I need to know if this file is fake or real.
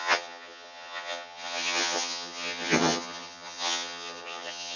fake